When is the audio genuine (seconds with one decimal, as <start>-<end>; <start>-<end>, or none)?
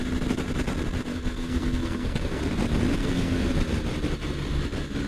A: 0.0-1.1; 2.4-3.0; 3.5-5.1